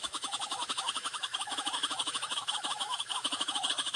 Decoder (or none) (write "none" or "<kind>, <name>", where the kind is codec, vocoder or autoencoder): autoencoder, DAC-VAE